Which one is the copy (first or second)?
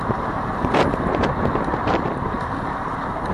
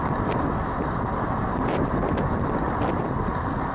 first